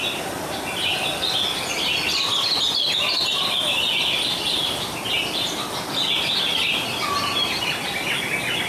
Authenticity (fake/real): real